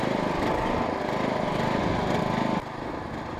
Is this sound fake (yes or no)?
no